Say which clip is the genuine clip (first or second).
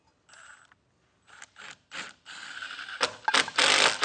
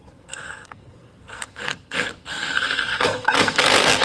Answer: first